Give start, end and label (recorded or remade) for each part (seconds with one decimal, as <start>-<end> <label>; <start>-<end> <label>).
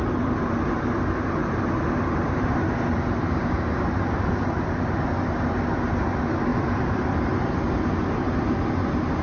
0.0-1.4 recorded; 1.4-5.4 remade; 5.4-6.5 recorded; 6.5-7.3 remade; 7.3-9.2 recorded